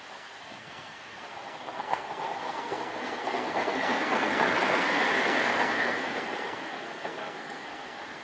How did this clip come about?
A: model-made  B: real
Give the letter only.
A